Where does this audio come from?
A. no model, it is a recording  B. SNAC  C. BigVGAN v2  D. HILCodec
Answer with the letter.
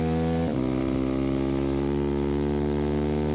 A